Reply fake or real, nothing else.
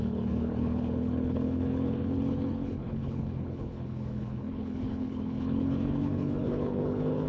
fake